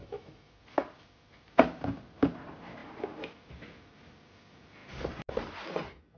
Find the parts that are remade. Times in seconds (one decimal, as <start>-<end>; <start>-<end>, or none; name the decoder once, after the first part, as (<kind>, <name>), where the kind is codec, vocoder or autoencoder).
0.0-0.5 (autoencoder, DAC-VAE)